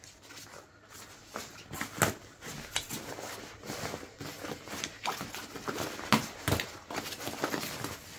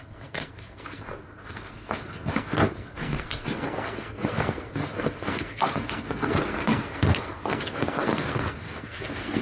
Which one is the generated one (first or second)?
second